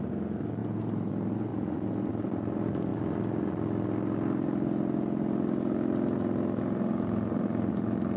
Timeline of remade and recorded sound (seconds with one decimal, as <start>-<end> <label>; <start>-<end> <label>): 0.0-0.6 recorded; 0.6-1.1 remade; 1.1-8.2 recorded